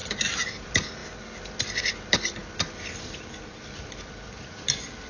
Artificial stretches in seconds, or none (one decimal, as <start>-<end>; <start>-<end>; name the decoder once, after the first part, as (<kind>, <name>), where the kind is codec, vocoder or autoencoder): 0.0-0.7 (vocoder, BigVGAN v2); 2.4-5.1

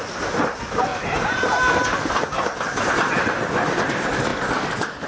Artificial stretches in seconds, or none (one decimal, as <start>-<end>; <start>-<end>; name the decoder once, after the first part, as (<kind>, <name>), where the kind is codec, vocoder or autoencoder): 0.9-1.7 (vocoder, BigVGAN v2)

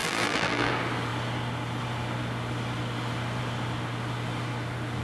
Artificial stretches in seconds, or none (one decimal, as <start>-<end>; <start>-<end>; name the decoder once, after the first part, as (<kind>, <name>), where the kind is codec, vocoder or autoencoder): 0.0-0.7 (vocoder, BigVGAN v2)

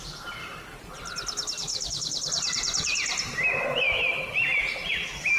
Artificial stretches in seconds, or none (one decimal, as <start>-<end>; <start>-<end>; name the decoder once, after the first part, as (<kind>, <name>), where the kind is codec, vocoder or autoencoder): 0.4-0.9 (vocoder, BigVGAN v2); 1.7-4.9

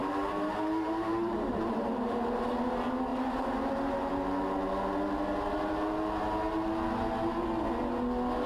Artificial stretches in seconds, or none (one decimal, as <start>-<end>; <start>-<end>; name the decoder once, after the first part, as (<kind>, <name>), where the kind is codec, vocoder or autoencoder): 0.0-2.4 (vocoder, BigVGAN v2); 3.1-4.1

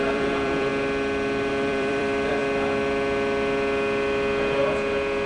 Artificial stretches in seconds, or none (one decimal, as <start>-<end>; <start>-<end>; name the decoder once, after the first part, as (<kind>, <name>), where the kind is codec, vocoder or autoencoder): 0.0-0.7 (vocoder, BigVGAN v2); 1.5-2.4